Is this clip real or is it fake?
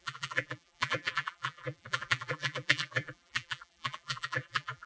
fake